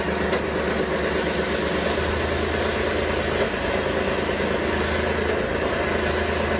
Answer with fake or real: real